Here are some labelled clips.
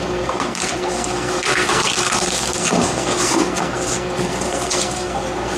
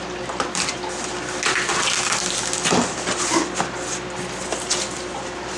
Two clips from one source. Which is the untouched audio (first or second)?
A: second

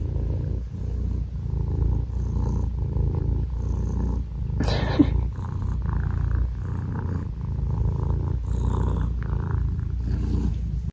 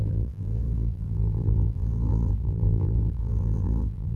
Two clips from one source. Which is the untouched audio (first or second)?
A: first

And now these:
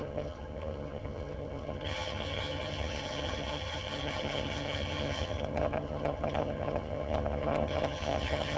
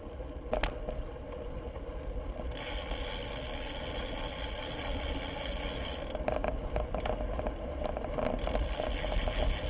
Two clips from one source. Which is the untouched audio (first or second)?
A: second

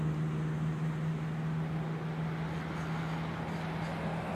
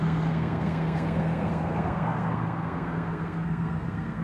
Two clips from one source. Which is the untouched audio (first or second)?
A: first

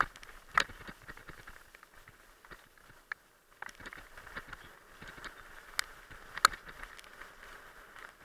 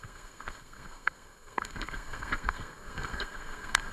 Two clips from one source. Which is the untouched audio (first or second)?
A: first